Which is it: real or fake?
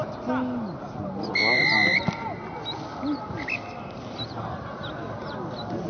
real